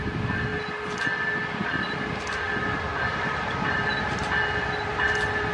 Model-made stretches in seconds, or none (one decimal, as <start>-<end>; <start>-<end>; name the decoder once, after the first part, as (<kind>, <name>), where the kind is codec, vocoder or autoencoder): 3.1-4.2 (vocoder, BigVGAN v2)